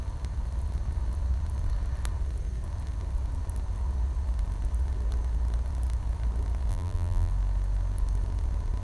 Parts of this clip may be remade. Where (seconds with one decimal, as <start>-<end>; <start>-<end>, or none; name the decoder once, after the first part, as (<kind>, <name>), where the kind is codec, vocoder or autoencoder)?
6.7-7.3 (vocoder, BigVGAN v2)